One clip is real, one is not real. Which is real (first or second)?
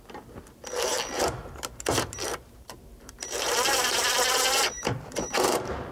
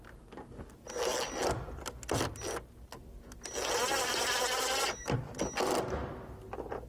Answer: second